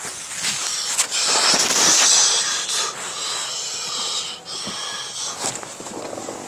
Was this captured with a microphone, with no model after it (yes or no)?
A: yes